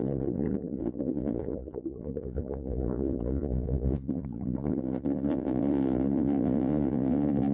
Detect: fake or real fake